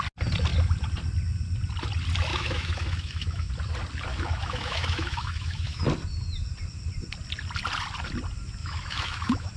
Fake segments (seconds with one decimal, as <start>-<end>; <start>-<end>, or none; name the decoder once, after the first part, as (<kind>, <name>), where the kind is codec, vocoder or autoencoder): 2.3-3.5 (autoencoder, DAC-VAE); 4.1-5.8; 8.6-9.6